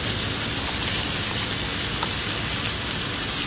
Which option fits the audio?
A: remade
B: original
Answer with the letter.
B